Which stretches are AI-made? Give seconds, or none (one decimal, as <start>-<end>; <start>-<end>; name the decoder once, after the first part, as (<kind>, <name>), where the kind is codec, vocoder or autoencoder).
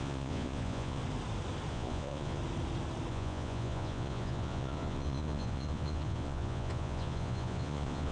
0.0-1.0 (vocoder, Vocos); 1.7-2.4; 3.1-8.1